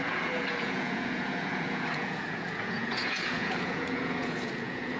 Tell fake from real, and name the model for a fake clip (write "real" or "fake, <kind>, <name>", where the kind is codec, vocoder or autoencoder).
fake, vocoder, Vocos